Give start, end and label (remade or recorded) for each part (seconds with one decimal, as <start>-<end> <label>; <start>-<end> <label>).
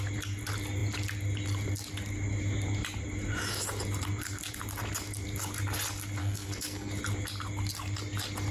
0.0-6.2 recorded; 6.2-6.9 remade; 6.9-8.5 recorded